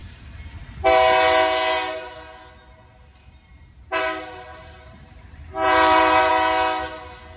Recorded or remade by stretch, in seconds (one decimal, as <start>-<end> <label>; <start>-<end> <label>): 0.0-0.6 remade; 0.6-3.5 recorded; 3.5-4.0 remade; 4.0-4.5 recorded; 4.5-6.3 remade; 6.3-7.4 recorded